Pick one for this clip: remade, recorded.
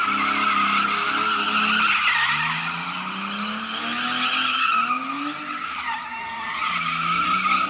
recorded